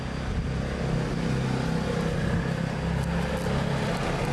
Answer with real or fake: real